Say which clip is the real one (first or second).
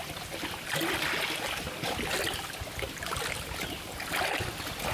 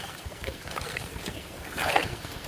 first